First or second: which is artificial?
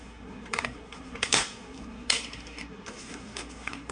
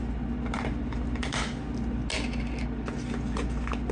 first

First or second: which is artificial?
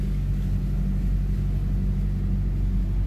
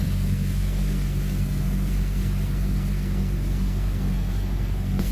second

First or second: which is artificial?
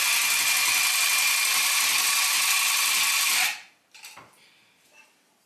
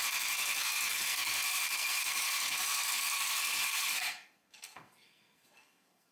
second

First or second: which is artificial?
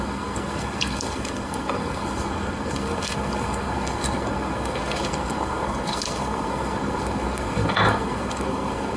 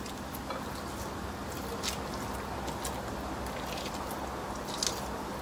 first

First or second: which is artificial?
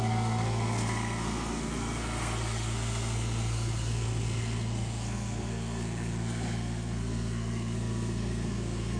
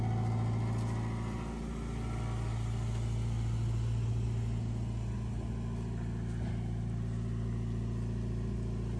first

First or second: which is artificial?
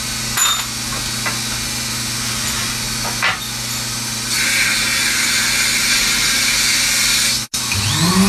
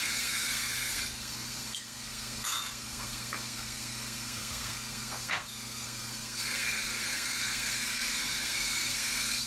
second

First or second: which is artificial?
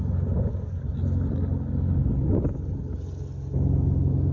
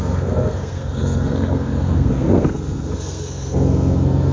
second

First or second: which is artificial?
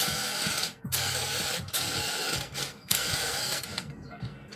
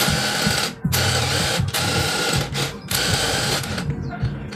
first